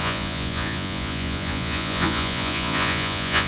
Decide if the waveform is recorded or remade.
remade